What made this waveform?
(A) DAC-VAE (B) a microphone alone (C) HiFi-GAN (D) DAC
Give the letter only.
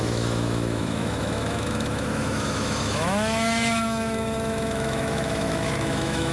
A